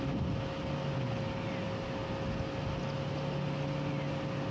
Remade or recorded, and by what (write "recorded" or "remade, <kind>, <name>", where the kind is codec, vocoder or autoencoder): recorded